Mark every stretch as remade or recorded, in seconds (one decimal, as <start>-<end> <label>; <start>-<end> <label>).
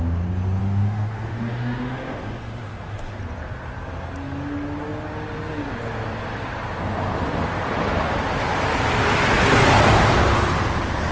0.0-0.6 recorded; 0.6-3.2 remade; 3.2-11.1 recorded